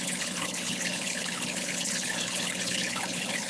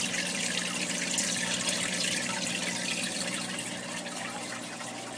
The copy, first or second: first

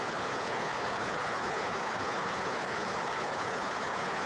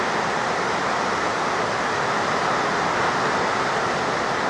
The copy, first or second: first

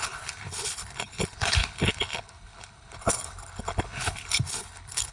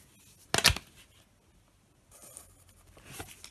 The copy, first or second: first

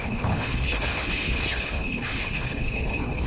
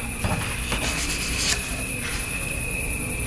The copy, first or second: first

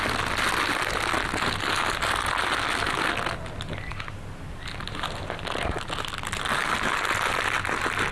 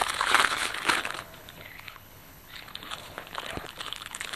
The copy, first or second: second